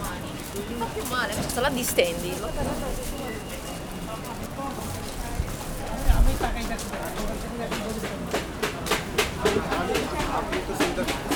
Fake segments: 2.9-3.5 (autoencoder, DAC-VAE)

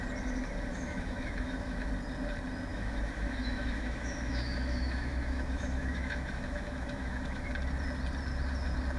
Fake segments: 0.7-1.9 (autoencoder, DAC-VAE); 2.7-7.5